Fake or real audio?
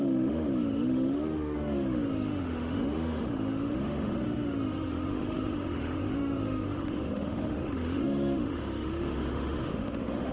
fake